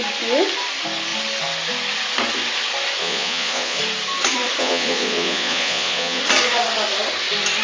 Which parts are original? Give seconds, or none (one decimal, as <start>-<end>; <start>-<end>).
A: 0.0-3.0; 3.8-4.6; 6.2-7.6